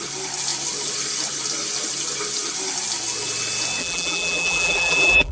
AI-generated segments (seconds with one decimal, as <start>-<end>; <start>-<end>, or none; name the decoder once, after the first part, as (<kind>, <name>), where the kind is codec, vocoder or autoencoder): 3.8-5.3 (vocoder, BigVGAN v2)